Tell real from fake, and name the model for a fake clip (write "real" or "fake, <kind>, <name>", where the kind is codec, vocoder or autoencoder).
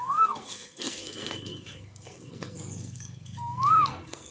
fake, codec, SNAC